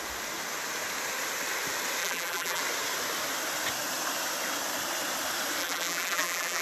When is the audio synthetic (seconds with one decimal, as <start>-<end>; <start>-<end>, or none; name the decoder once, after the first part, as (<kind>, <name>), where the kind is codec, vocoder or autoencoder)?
2.0-2.6 (vocoder, BigVGAN v2); 5.6-6.6